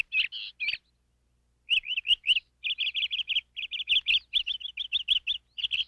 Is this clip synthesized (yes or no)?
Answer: no